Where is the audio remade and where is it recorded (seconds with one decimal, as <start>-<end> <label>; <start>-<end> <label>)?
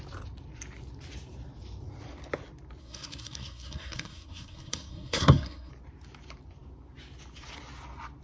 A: 0.0-2.8 recorded; 2.8-5.7 remade; 5.7-8.2 recorded